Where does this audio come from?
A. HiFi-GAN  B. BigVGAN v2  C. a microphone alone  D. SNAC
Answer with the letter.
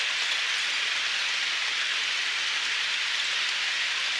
B